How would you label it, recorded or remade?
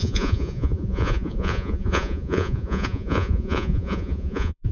remade